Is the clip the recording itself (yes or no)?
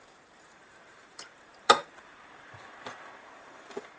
no